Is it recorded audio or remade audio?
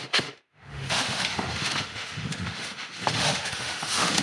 remade